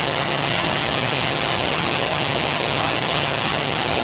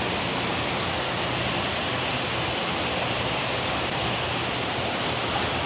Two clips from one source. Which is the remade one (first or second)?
first